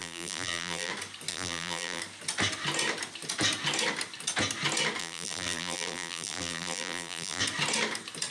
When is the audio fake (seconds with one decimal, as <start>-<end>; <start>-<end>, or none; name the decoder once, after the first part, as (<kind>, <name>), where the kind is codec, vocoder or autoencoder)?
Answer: 0.0-0.9 (vocoder, BigVGAN v2); 1.3-2.0; 5.0-7.4